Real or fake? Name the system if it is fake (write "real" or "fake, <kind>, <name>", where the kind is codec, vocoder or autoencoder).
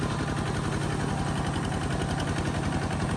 real